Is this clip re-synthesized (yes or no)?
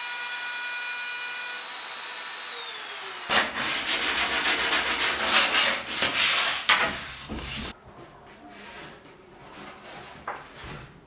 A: no